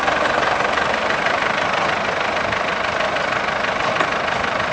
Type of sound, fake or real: real